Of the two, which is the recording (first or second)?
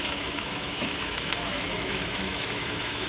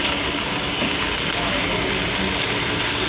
second